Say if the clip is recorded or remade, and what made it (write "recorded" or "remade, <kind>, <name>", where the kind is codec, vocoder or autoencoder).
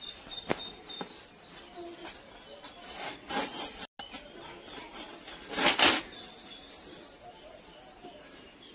recorded